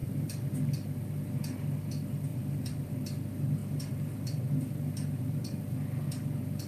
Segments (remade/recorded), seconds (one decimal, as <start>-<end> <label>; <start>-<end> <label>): 0.0-0.6 remade; 0.6-2.3 recorded; 2.3-2.9 remade; 2.9-3.6 recorded; 3.6-5.6 remade; 5.6-6.7 recorded